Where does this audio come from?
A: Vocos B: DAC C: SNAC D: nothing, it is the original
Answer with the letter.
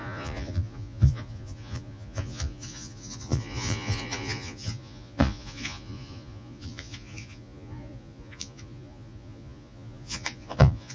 A